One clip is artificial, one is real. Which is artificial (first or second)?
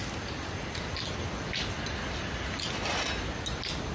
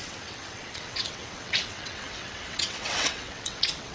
second